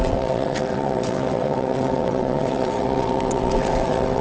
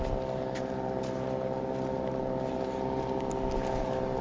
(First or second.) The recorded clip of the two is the second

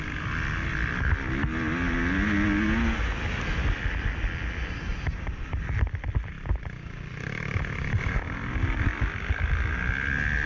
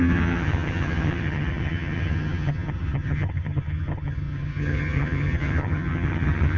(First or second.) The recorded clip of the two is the first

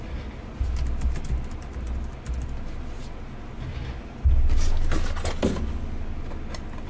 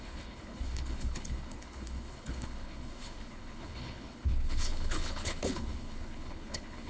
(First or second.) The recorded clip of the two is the first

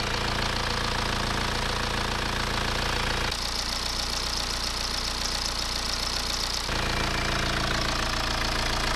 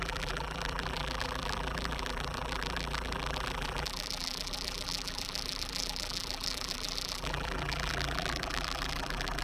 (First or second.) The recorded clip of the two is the first